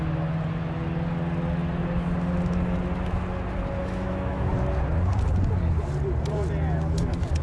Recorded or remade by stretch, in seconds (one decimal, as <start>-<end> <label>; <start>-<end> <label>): 0.0-3.8 recorded; 3.8-4.5 remade; 4.5-7.4 recorded